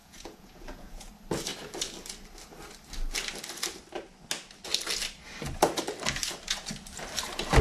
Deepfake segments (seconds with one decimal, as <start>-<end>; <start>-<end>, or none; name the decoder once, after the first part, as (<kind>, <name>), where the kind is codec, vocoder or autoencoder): 0.0-1.1 (vocoder, Vocos)